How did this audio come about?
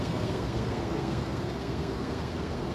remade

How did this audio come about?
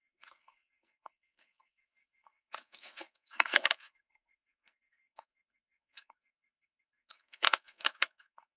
remade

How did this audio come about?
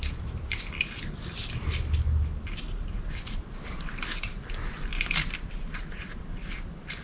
recorded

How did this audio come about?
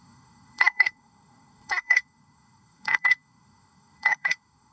remade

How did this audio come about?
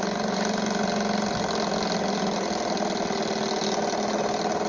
recorded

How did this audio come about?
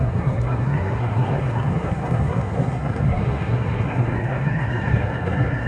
remade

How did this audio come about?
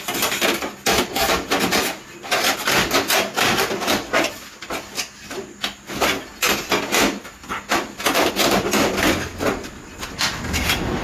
recorded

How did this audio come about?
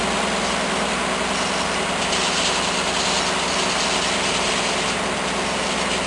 recorded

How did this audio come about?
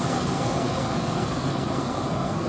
remade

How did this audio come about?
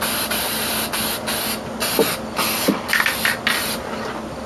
recorded